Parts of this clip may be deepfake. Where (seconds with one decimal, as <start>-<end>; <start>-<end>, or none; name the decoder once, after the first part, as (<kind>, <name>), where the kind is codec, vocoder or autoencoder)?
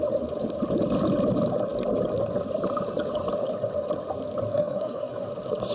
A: 4.5-5.1 (codec, SNAC)